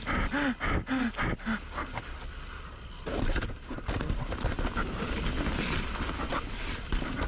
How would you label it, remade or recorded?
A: recorded